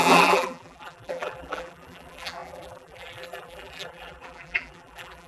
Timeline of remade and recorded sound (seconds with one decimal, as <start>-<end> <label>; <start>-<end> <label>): 0.0-5.3 remade